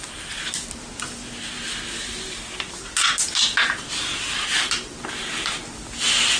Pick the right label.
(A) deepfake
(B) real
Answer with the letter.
B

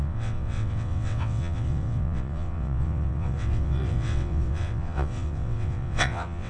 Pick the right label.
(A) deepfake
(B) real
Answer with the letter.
A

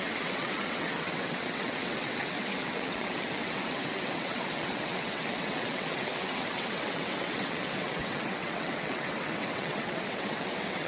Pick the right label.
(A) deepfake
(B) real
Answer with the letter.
A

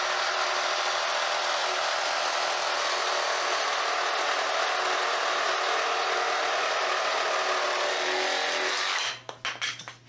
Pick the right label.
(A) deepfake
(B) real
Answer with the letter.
B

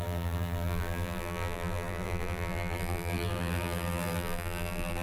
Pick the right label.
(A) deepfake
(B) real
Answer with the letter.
A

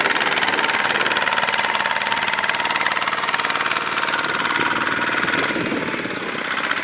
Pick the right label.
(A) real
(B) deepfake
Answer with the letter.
A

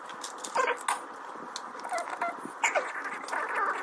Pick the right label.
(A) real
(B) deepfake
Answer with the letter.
A